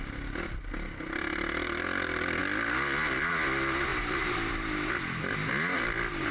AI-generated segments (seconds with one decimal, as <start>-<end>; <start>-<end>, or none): none